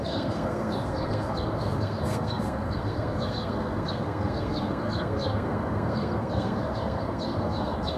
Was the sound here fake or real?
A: fake